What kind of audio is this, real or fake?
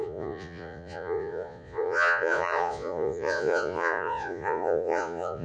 fake